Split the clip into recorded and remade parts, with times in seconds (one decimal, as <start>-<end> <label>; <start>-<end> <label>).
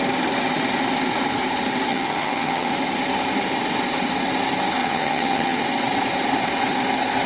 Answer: 0.0-1.9 recorded; 1.9-2.7 remade; 2.7-4.8 recorded; 4.8-5.6 remade; 5.6-7.3 recorded